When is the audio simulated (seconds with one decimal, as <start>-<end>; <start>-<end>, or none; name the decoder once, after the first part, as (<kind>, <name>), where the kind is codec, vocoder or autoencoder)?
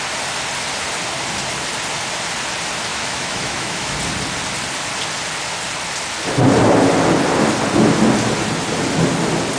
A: 2.9-4.0 (autoencoder, DAC-VAE)